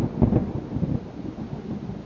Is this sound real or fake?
real